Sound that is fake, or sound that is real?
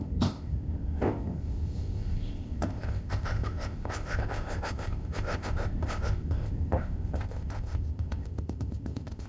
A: fake